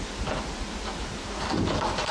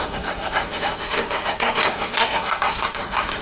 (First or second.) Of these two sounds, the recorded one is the first